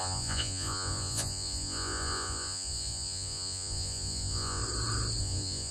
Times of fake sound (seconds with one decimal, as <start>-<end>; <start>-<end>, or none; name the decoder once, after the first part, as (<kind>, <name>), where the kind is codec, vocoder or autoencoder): 0.0-4.6 (vocoder, Vocos); 5.2-5.7